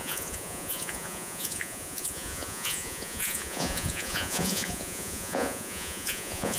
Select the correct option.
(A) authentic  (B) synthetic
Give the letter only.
B